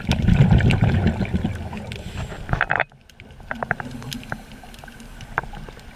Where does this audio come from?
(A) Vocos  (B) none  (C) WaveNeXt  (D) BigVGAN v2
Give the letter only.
B